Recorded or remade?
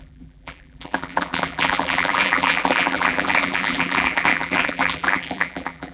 remade